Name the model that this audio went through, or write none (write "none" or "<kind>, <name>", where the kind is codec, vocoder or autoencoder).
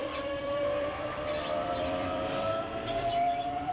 vocoder, BigVGAN v2